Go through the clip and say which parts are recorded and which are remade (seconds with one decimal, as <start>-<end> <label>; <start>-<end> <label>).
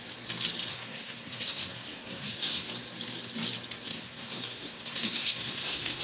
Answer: 0.0-0.7 recorded; 0.7-2.7 remade; 2.7-3.9 recorded; 3.9-6.0 remade